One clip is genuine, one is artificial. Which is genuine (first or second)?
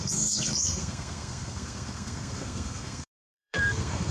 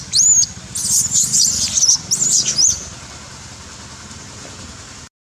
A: second